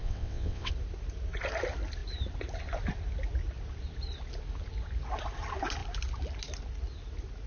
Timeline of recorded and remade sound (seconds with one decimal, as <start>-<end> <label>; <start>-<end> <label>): 0.0-0.7 remade; 0.7-7.5 recorded